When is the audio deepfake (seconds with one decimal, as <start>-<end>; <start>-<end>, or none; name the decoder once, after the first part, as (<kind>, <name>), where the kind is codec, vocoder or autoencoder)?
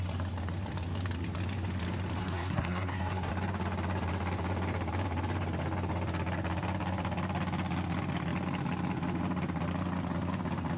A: 2.2-3.3 (codec, SNAC)